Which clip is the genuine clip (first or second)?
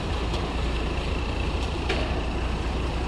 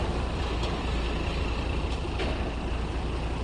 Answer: second